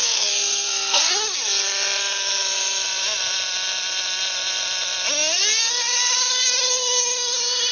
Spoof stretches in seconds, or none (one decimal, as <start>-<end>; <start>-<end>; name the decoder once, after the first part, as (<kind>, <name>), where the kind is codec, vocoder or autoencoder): 0.0-1.1 (codec, SNAC)